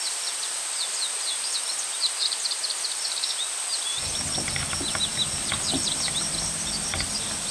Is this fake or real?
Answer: real